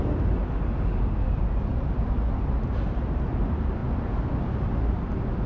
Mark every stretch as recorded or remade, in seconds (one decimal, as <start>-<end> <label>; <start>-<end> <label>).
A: 0.0-5.5 recorded